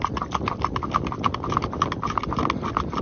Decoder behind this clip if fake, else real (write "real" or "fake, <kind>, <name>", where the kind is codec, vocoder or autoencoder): real